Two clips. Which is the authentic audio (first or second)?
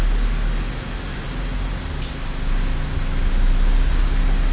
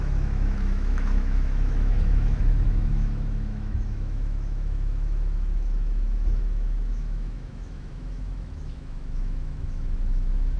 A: first